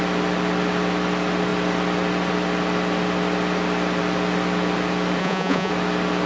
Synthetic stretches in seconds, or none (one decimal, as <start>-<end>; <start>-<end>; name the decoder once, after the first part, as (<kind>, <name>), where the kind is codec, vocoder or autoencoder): 5.2-5.7 (vocoder, Vocos)

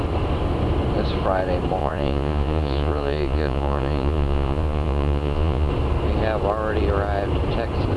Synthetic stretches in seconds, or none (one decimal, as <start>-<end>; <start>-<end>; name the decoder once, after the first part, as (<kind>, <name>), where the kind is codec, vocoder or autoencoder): 1.8-5.7 (vocoder, Vocos)